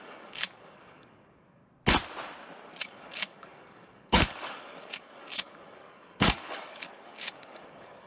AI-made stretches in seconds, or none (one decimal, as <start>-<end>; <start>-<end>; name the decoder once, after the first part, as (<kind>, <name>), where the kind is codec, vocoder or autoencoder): 0.0-1.6 (codec, DAC); 2.8-8.1